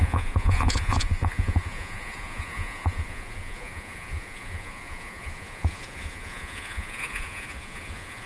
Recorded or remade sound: remade